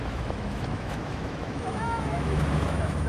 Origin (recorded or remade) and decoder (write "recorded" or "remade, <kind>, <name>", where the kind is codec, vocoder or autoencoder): remade, autoencoder, DAC-VAE